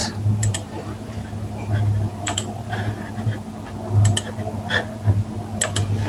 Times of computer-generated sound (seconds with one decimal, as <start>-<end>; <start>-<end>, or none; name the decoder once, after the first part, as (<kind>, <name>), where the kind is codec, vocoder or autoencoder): 0.0-1.7 (vocoder, BigVGAN v2); 2.1-3.4